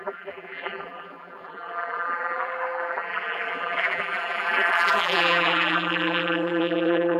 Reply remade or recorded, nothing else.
remade